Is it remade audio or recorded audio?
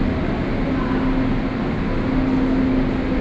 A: recorded